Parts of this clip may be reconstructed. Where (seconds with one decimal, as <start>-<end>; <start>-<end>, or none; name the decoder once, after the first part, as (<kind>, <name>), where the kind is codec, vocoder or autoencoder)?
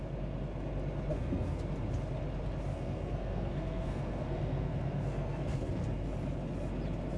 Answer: 1.1-1.6 (codec, SNAC); 2.7-5.7